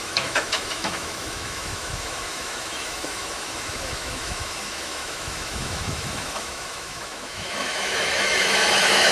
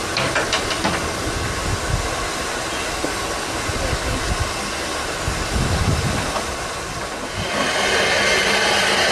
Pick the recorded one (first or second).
second